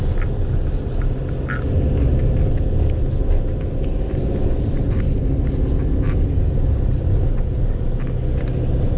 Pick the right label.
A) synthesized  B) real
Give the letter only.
B